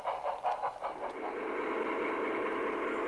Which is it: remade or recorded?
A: recorded